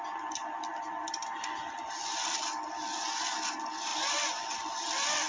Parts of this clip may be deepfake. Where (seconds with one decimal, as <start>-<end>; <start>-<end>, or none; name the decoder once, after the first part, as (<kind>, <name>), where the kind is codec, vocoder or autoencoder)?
0.7-2.7 (vocoder, BigVGAN v2); 3.9-5.3

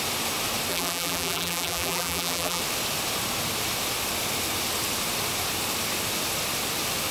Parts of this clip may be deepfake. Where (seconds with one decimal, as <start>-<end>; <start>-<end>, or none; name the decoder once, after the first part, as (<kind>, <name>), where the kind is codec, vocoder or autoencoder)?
0.7-2.6 (vocoder, BigVGAN v2)

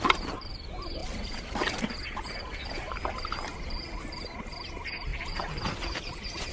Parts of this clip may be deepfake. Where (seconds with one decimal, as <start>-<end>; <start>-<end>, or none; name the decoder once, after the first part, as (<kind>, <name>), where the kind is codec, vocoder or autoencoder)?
1.0-1.8 (vocoder, BigVGAN v2); 5.1-5.7

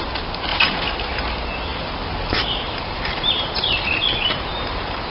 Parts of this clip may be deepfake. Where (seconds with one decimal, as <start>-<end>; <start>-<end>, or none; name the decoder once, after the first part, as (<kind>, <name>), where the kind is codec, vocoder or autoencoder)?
0.5-1.1 (vocoder, BigVGAN v2); 1.7-5.1

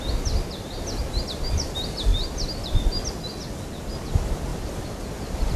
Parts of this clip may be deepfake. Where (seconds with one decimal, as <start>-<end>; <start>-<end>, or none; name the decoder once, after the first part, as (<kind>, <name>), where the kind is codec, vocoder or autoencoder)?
4.5-5.0 (vocoder, BigVGAN v2)

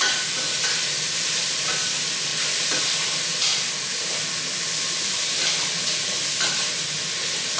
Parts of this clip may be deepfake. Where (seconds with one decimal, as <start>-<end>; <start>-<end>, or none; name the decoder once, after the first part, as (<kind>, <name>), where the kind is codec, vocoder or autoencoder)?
2.3-6.7 (vocoder, BigVGAN v2)

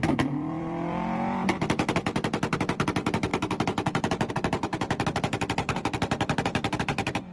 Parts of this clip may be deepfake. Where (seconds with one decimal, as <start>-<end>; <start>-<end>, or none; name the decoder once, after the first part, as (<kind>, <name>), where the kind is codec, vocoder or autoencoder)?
0.0-3.3 (vocoder, BigVGAN v2); 4.3-4.7; 6.8-7.3

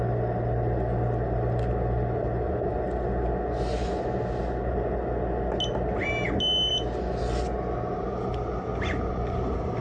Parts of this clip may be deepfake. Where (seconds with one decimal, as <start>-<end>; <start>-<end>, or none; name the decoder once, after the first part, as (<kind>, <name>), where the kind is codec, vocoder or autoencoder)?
none